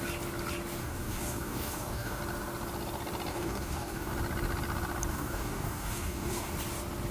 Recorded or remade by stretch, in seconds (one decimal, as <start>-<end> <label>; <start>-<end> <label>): 0.0-0.8 recorded; 0.8-2.2 remade; 2.2-3.3 recorded; 3.3-4.1 remade; 4.1-5.1 recorded; 5.1-6.5 remade; 6.5-7.1 recorded